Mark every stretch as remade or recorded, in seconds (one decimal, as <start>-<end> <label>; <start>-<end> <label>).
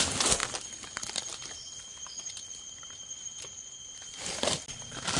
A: 0.0-5.2 recorded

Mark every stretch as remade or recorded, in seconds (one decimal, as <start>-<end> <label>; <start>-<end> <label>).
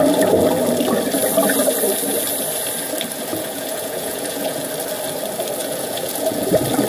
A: 0.0-3.3 recorded; 3.3-4.7 remade; 4.7-5.6 recorded; 5.6-6.5 remade; 6.5-6.9 recorded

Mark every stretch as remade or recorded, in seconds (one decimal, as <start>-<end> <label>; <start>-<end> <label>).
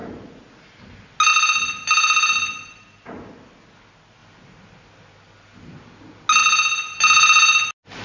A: 0.0-8.0 recorded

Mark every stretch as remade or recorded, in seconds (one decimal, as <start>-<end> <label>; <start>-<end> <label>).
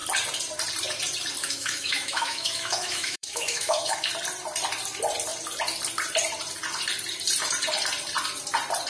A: 0.0-1.4 recorded; 1.4-4.1 remade; 4.1-8.9 recorded